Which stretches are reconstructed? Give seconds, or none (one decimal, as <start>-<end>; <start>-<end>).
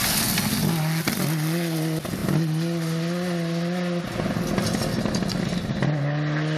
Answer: none